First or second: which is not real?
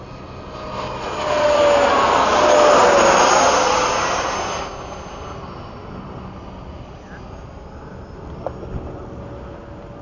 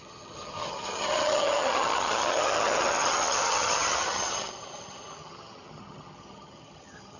second